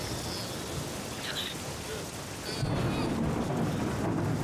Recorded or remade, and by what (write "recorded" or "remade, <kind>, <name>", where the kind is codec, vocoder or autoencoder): recorded